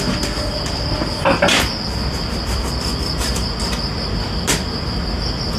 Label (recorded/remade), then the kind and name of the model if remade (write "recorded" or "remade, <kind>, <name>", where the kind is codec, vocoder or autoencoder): recorded